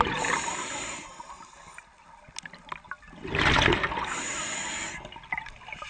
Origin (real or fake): real